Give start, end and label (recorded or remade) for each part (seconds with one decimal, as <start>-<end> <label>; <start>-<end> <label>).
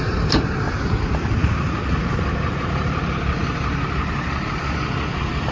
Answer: 0.0-1.4 recorded; 1.4-4.7 remade; 4.7-5.5 recorded